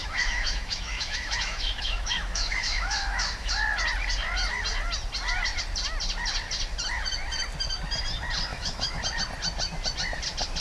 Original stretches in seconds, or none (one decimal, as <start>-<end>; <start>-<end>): 3.5-8.5; 9.0-10.6